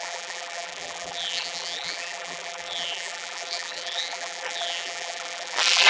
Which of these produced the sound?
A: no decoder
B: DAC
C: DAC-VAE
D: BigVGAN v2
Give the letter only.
D